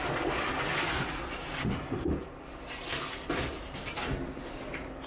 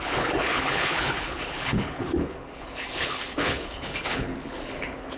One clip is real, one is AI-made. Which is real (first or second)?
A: first